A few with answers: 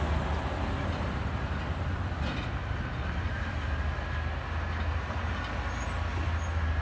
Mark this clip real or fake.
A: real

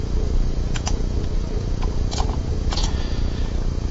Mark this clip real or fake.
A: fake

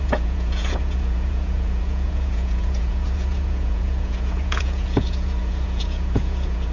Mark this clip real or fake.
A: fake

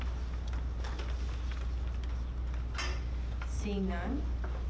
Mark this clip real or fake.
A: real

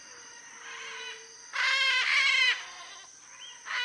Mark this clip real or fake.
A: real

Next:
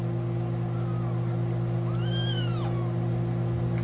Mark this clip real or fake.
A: real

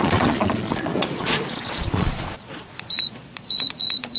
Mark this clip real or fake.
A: fake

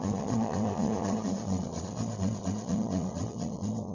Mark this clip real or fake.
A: fake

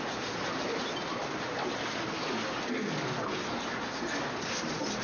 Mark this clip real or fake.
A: real